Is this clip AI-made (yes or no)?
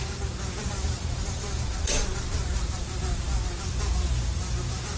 yes